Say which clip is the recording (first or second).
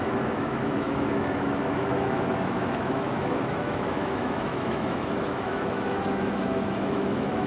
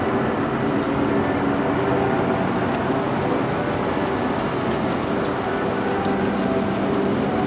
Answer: second